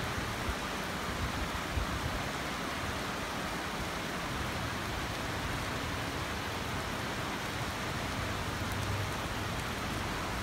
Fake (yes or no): no